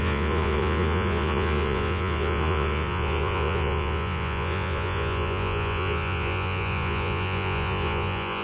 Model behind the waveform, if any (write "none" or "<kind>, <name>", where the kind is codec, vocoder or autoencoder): vocoder, Vocos